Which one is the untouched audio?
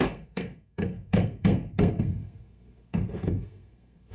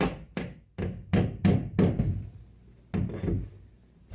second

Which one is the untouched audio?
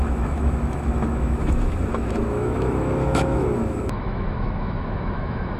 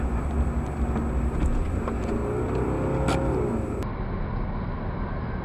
second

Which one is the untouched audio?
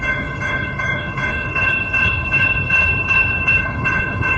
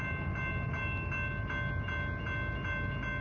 second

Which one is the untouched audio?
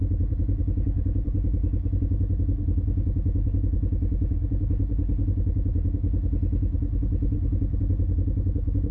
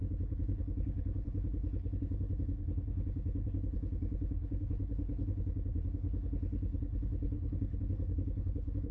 first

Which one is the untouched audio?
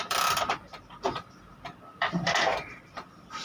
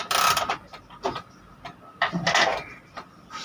second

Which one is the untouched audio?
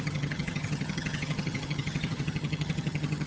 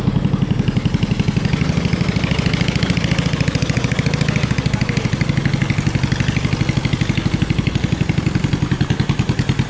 second